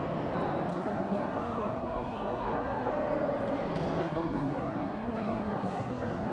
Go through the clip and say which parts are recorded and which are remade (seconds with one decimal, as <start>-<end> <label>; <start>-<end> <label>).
0.0-0.7 recorded; 0.7-2.9 remade; 2.9-4.0 recorded; 4.0-6.3 remade